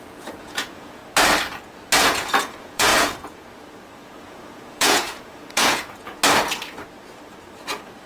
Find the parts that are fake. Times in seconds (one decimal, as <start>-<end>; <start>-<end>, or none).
0.0-1.0; 2.0-6.2